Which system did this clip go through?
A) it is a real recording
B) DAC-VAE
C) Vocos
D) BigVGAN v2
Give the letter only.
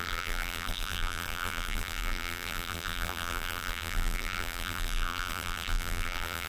D